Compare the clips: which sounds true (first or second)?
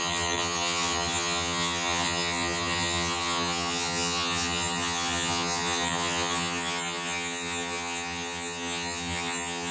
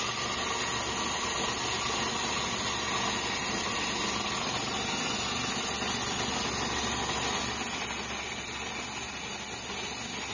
second